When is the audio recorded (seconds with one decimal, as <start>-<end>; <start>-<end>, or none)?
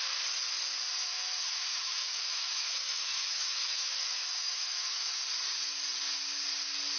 0.0-1.0; 5.2-7.0